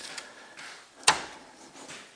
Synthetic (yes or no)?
no